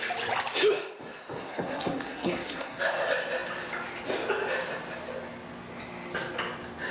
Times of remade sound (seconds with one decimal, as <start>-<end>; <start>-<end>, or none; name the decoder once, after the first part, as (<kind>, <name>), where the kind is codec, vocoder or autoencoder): 1.4-2.8 (codec, SNAC)